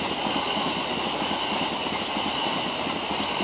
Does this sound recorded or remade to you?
recorded